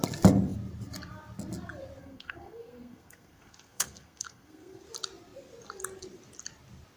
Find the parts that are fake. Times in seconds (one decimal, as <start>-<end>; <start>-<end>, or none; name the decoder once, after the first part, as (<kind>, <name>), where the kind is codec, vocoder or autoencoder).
2.0-4.8 (codec, SNAC)